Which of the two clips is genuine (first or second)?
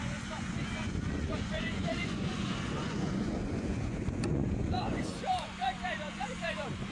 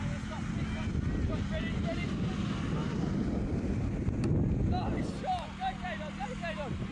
second